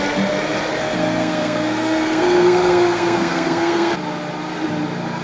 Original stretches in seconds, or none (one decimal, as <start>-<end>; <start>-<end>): 0.0-0.8; 3.9-5.2